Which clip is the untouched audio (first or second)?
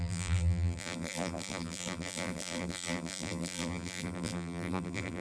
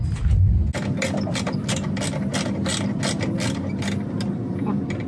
second